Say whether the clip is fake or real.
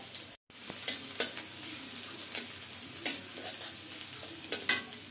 real